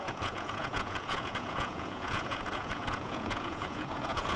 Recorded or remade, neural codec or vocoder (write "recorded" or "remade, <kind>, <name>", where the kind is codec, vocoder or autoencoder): remade, vocoder, Vocos